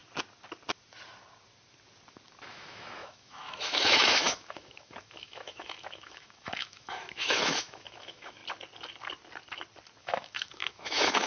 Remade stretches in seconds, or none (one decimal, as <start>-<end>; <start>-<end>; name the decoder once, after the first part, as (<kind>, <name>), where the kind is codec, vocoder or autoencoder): 2.5-8.4 (autoencoder, DAC-VAE); 10.0-11.3

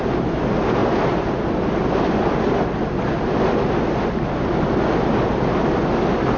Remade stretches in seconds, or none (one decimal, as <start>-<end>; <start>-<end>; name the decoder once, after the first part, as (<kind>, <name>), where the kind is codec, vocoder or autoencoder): none

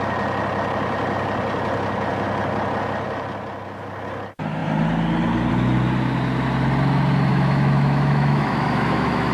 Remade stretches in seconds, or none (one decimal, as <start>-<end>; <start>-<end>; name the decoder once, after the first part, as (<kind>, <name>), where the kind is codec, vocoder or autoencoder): 7.3-9.3 (autoencoder, DAC-VAE)

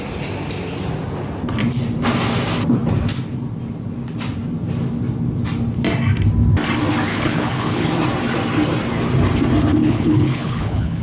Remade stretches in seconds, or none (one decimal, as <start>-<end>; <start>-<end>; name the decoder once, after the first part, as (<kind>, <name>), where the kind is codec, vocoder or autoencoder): 7.1-7.9 (codec, HILCodec); 9.8-11.0

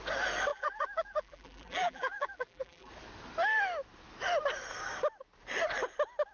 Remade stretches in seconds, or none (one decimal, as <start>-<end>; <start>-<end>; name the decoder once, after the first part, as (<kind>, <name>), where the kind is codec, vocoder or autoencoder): 0.5-2.9 (vocoder, BigVGAN v2)

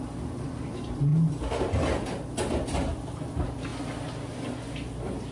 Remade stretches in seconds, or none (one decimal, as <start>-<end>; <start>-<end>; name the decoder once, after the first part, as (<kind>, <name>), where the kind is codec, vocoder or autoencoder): none

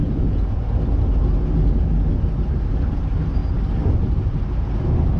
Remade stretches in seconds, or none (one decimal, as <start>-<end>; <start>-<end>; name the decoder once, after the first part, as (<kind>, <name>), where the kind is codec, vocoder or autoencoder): 0.0-0.6 (vocoder, Vocos)

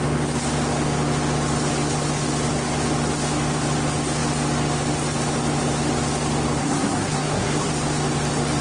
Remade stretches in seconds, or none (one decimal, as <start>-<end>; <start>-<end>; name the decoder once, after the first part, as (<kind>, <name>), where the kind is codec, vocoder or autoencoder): 6.6-7.7 (codec, SNAC)